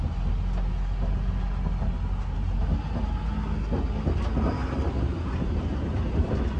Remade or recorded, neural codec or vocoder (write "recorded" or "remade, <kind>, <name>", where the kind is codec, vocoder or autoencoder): recorded